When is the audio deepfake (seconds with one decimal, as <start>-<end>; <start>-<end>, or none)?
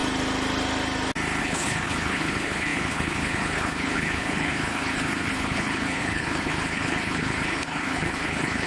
1.4-8.7